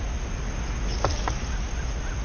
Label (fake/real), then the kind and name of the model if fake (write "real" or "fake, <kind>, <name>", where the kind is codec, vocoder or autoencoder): real